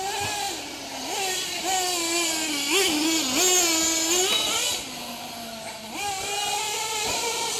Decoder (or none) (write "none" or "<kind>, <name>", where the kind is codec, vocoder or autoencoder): none